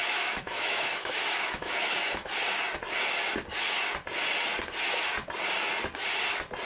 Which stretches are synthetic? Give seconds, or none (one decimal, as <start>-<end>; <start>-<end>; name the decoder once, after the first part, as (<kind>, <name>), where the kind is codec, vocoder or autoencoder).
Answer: 0.0-2.3 (autoencoder, DAC-VAE)

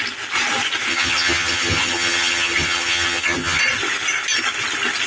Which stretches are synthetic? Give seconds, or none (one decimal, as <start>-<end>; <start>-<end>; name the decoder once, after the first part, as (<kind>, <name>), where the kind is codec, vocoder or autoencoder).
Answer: 0.9-3.6 (vocoder, HiFi-GAN)

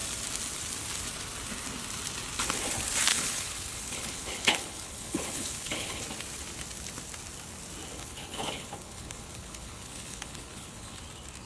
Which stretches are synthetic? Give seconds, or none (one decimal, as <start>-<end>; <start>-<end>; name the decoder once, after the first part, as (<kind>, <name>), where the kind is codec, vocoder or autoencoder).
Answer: 3.1-6.0 (codec, HILCodec); 7.9-11.0

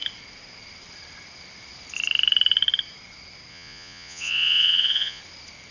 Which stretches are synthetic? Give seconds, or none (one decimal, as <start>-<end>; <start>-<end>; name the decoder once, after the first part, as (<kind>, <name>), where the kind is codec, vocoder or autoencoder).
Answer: 3.5-5.2 (vocoder, Vocos)

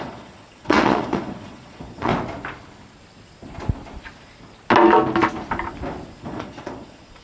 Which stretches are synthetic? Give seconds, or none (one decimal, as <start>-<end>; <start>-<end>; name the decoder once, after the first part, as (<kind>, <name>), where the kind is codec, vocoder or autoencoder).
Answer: 0.0-2.1 (vocoder, Vocos); 6.2-7.2

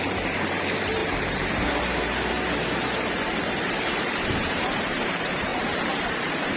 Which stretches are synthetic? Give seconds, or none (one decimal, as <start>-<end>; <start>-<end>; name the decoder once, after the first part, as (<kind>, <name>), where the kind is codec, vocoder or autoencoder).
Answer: 0.0-6.6 (vocoder, BigVGAN v2)

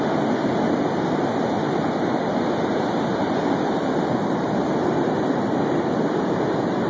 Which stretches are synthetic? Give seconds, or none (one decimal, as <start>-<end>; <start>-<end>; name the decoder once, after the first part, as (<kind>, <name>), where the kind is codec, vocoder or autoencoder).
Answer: 3.1-5.9 (vocoder, BigVGAN v2)

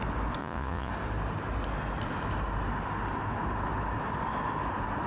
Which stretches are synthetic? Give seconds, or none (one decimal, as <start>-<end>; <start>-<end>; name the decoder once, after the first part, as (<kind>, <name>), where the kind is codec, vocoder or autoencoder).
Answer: 0.4-0.9 (vocoder, Vocos)